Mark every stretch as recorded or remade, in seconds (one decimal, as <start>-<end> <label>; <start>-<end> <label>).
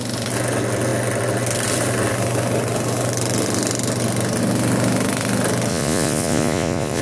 0.0-5.7 recorded; 5.7-7.0 remade